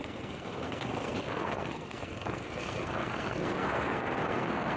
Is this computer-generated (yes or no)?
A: yes